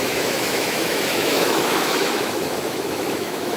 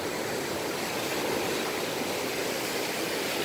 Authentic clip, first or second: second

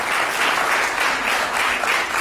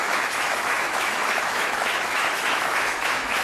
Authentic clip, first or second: first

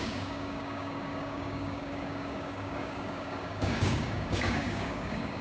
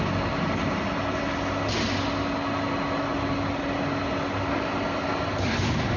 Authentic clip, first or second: second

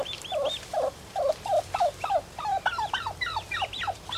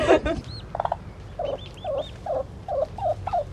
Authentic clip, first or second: second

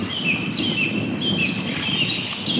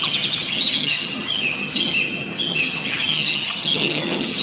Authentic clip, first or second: first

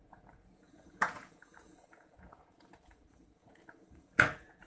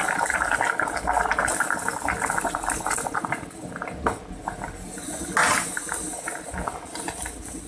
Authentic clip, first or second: second